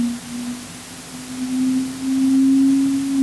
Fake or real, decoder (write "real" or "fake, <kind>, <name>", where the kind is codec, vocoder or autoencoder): real